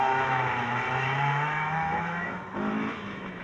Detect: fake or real fake